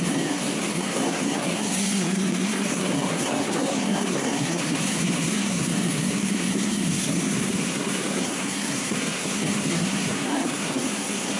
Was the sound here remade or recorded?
remade